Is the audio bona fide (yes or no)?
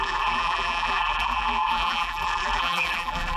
no